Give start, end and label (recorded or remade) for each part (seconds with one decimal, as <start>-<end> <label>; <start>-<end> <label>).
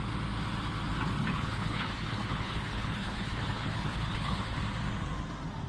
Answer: 0.0-1.2 recorded; 1.2-4.6 remade; 4.6-5.7 recorded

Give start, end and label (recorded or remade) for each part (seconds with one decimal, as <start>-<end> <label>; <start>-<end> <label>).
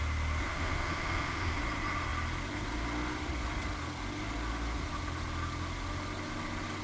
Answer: 0.0-0.4 recorded; 0.4-1.6 remade; 1.6-6.8 recorded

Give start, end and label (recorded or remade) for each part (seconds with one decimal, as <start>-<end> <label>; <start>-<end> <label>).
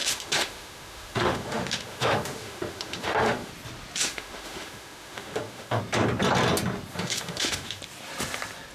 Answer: 0.0-3.5 remade; 3.5-4.0 recorded; 4.0-5.8 remade; 5.8-6.9 recorded; 6.9-7.8 remade; 7.8-8.7 recorded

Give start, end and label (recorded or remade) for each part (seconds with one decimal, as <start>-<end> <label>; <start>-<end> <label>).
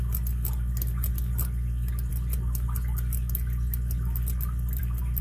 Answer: 0.0-5.2 recorded